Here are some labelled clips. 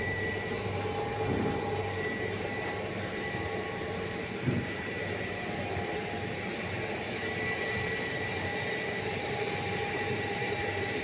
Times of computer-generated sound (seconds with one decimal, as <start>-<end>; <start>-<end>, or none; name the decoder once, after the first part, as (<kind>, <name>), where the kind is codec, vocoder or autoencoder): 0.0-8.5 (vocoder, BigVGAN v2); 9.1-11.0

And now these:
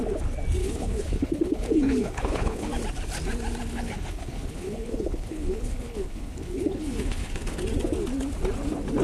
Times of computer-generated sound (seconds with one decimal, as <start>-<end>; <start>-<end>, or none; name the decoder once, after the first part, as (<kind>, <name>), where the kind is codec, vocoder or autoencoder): 0.6-2.7 (codec, HILCodec); 3.7-7.6

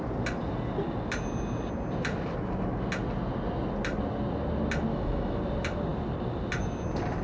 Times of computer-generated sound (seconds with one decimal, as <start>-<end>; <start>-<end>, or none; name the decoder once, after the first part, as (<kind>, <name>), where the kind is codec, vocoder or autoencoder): 4.9-5.4 (autoencoder, DAC-VAE)

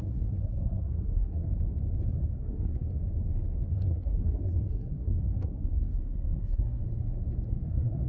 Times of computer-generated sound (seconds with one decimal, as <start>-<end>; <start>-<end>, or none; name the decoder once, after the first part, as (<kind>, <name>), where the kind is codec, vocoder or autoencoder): 0.0-1.5 (codec, SNAC); 2.1-3.0; 3.7-6.8; 7.5-8.1